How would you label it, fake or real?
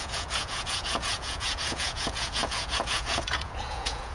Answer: fake